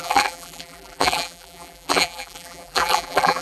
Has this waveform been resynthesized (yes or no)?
yes